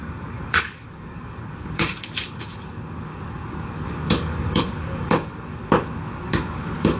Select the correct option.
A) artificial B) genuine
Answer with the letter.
A